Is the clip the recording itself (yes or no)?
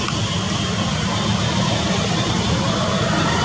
yes